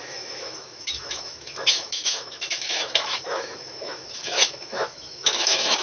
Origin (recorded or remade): remade